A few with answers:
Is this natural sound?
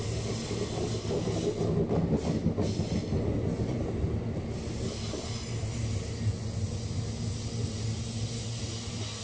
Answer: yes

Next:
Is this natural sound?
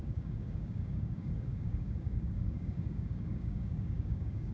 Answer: no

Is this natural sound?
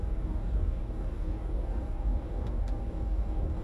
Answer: no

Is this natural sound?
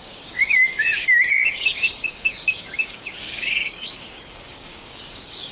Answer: no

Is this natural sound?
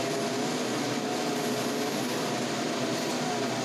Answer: yes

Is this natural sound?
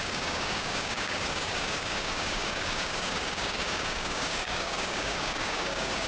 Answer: no